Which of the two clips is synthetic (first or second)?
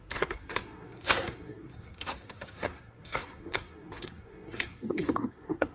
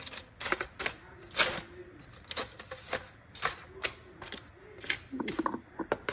first